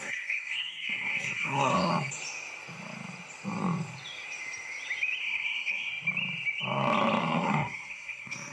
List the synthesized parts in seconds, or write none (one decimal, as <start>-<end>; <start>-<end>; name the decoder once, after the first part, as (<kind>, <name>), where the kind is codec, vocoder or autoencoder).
0.0-1.9 (codec, SNAC); 5.2-5.9; 7.2-8.5